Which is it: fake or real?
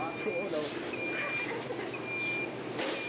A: real